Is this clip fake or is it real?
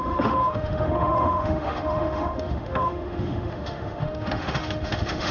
fake